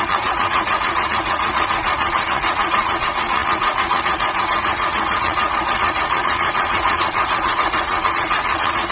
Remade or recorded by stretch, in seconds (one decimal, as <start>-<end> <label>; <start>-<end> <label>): 0.0-8.9 remade